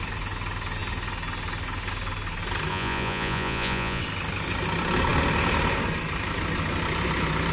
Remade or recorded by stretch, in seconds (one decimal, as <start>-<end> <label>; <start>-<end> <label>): 0.0-2.7 recorded; 2.7-4.0 remade; 4.0-7.5 recorded